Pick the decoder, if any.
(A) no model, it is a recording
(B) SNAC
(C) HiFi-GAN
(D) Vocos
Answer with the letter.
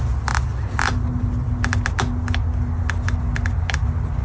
A